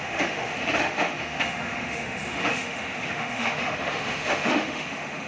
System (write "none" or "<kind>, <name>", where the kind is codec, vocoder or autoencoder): autoencoder, DAC-VAE